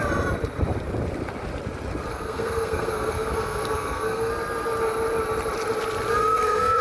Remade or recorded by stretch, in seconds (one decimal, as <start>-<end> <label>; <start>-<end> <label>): 0.0-2.1 recorded; 2.1-4.3 remade; 4.3-6.2 recorded; 6.2-6.8 remade